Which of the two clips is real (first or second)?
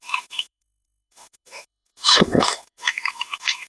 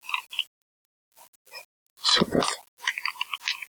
second